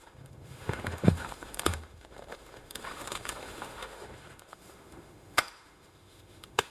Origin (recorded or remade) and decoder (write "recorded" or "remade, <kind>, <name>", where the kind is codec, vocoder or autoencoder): remade, autoencoder, DAC-VAE